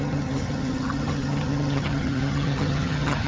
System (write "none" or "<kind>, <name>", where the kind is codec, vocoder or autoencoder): vocoder, HiFi-GAN